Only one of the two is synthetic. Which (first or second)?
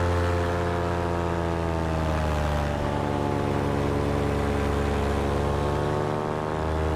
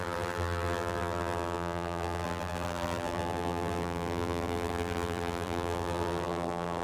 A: second